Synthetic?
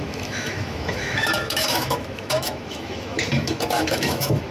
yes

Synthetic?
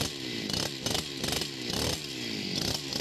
no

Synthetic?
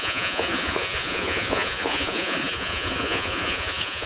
yes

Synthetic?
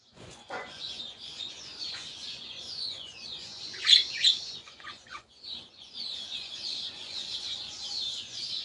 yes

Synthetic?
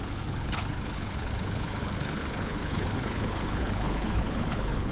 yes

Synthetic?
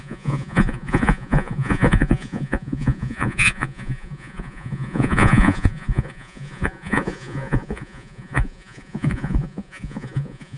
yes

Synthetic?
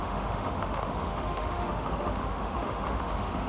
yes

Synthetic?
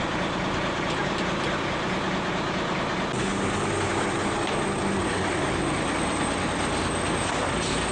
no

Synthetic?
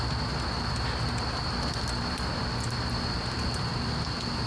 no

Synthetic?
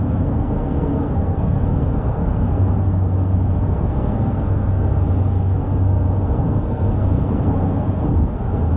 yes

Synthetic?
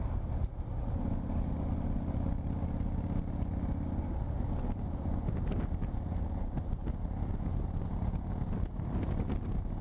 no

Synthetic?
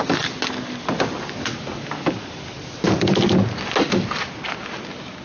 no